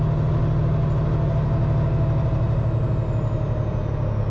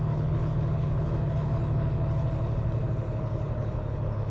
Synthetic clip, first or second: second